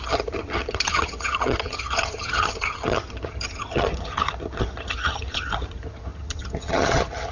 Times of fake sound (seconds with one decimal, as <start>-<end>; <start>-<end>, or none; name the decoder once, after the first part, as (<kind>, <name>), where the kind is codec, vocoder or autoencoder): 0.0-7.3 (vocoder, HiFi-GAN)